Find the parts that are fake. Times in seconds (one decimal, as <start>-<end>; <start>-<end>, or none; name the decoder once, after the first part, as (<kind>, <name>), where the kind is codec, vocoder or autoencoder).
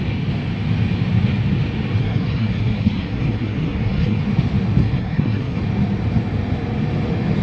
2.0-4.2 (codec, SNAC); 4.8-5.6